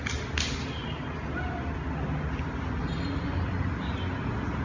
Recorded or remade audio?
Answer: recorded